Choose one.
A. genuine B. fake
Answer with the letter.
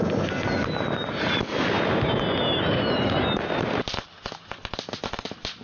A